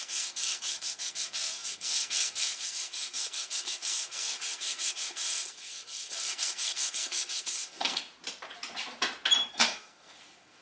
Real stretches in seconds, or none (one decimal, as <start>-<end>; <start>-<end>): 8.1-9.5